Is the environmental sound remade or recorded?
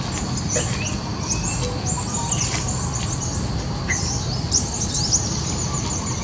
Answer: recorded